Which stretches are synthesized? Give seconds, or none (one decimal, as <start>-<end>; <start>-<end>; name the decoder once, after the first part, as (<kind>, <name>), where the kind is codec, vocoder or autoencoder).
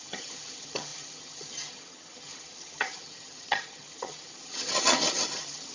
0.0-5.7 (vocoder, HiFi-GAN)